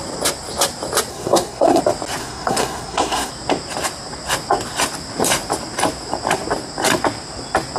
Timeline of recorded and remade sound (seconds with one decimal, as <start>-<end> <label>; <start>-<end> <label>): 0.0-1.1 recorded; 1.1-1.8 remade; 1.8-2.2 recorded; 2.2-3.3 remade; 3.3-7.8 recorded